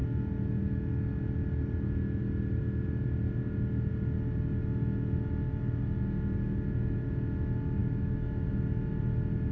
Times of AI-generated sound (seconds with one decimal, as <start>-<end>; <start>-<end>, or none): none